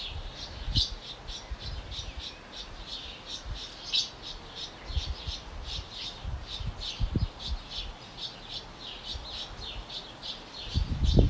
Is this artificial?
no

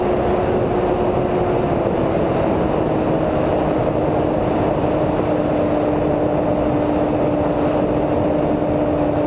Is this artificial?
no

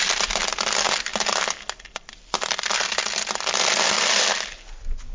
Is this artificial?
no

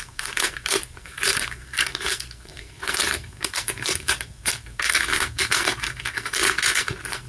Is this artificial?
yes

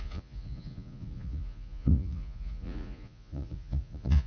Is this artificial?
yes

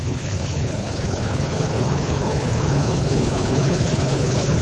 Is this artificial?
yes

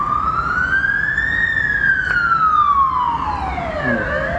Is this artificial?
no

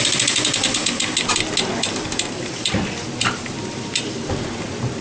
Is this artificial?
no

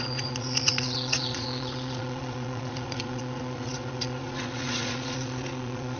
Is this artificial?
yes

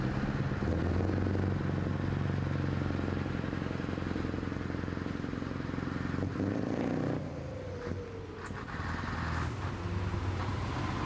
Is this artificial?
no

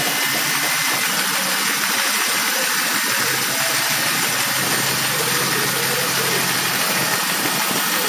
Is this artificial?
no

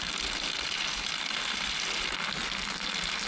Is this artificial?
no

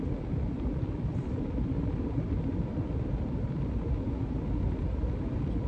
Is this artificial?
no